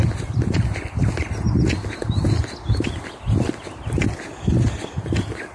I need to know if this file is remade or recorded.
recorded